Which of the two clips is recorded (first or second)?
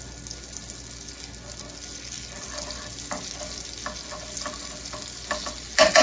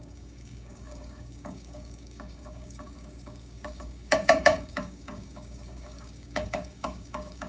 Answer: first